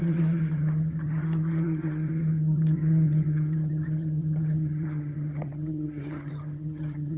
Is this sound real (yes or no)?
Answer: no